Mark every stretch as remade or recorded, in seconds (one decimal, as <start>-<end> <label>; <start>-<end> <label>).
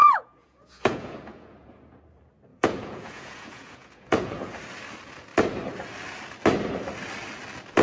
0.0-2.0 remade; 2.0-2.5 recorded; 2.5-4.6 remade; 4.6-7.8 recorded